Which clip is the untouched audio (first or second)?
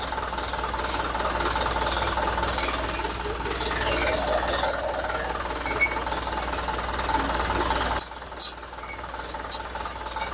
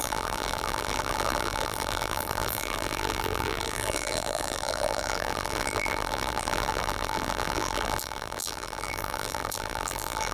first